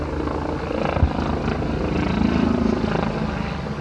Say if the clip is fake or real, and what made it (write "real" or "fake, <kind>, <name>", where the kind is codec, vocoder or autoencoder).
real